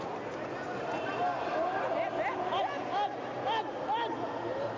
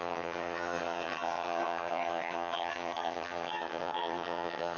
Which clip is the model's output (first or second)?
second